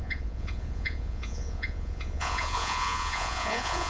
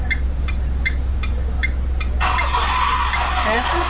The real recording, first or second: second